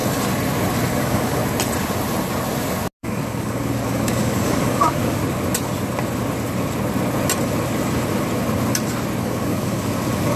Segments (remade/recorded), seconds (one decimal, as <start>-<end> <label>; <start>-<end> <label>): 0.0-0.9 recorded; 0.9-1.4 remade; 1.4-3.0 recorded; 3.0-5.2 remade; 5.2-9.2 recorded; 9.2-10.4 remade